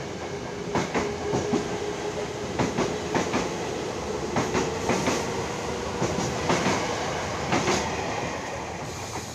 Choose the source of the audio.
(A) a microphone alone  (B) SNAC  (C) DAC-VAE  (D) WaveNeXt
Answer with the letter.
A